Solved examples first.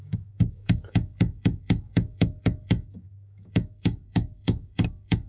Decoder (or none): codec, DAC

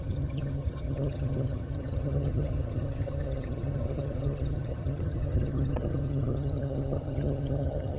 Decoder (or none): vocoder, HiFi-GAN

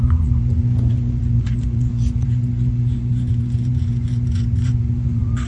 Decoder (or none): vocoder, Vocos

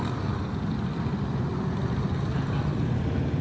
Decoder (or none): none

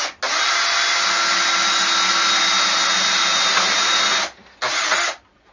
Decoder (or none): none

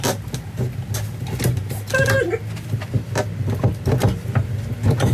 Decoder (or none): none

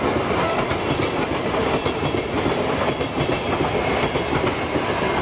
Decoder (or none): none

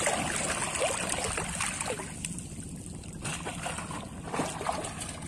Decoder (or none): none